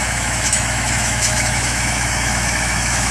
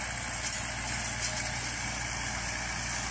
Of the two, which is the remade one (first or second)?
first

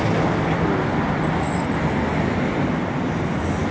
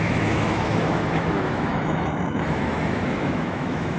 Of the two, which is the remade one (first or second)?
second